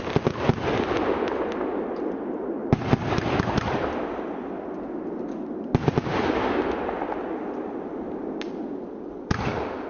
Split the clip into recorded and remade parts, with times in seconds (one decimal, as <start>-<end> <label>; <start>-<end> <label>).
0.0-9.9 recorded